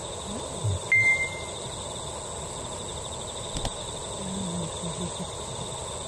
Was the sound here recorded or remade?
recorded